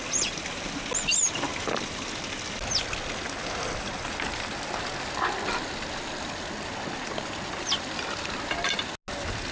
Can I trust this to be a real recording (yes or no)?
yes